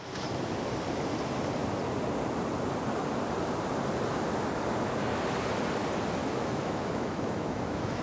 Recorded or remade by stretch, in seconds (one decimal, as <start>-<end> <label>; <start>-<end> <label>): 0.0-6.2 recorded; 6.2-8.0 remade